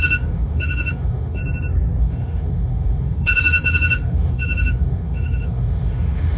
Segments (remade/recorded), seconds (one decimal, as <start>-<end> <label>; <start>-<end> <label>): 0.0-1.4 remade; 1.4-2.0 recorded; 2.0-6.4 remade